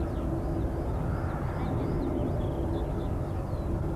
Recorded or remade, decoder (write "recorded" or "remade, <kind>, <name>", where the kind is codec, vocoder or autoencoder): recorded